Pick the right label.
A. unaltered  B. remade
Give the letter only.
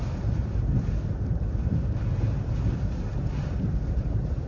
B